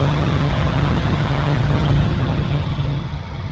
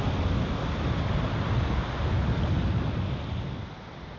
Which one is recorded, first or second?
second